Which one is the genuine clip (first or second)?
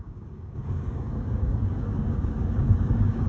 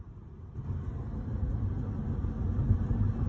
second